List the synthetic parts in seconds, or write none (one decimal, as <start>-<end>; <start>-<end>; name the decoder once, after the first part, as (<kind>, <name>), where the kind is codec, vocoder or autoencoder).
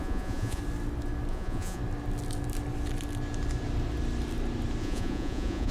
0.0-0.6 (vocoder, Vocos); 1.3-1.8; 4.8-5.7